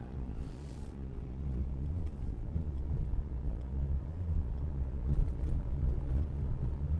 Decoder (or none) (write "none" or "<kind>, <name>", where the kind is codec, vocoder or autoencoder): vocoder, Vocos